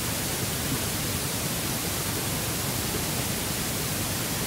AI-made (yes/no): no